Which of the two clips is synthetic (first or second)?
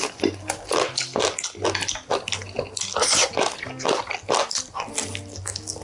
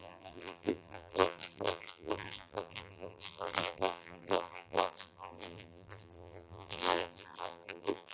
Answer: second